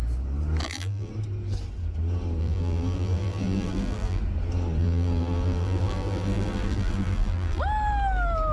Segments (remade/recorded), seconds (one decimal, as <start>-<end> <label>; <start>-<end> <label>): 0.0-0.6 recorded; 0.6-1.1 remade; 1.1-2.4 recorded; 2.4-4.2 remade; 4.2-4.8 recorded; 4.8-7.6 remade; 7.6-8.5 recorded